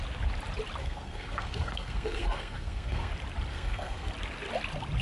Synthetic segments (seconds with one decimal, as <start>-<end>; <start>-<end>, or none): 0.8-3.1; 3.5-4.1